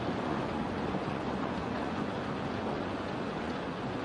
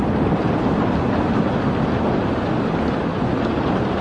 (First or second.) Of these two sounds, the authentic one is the second